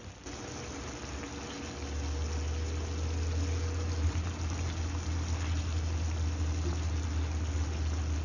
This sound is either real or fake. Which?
real